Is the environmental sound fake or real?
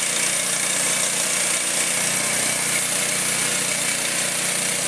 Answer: real